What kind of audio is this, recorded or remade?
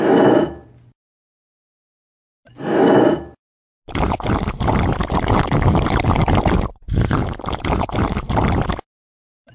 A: recorded